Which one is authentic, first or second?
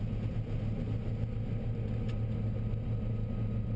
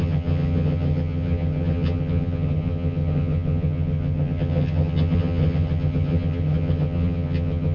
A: first